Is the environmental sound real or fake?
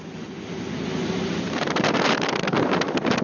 real